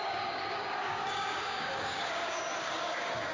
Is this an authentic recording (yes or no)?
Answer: no